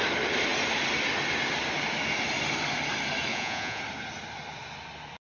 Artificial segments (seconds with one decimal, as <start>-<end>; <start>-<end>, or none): 3.3-3.8